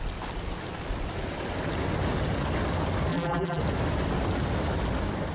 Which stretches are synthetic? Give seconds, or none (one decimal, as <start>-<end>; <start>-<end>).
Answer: 3.1-3.6